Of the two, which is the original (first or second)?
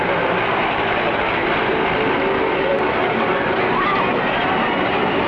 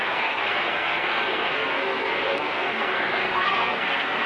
first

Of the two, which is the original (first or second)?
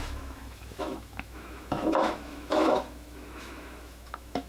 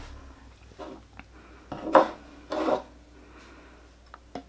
second